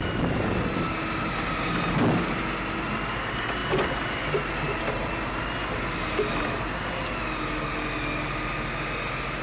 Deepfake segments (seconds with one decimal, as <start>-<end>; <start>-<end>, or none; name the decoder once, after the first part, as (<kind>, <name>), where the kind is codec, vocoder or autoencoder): none